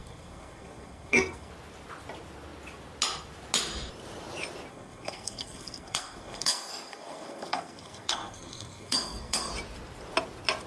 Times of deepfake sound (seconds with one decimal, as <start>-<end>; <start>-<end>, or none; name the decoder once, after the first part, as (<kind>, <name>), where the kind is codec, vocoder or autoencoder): 0.0-1.5 (codec, SNAC); 4.7-9.5